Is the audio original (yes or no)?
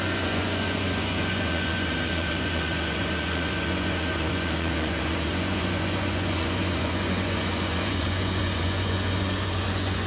no